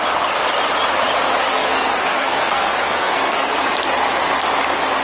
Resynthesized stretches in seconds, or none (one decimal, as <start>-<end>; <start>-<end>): 1.5-3.5